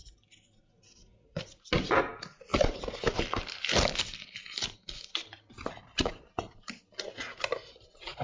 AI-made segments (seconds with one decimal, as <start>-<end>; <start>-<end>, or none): none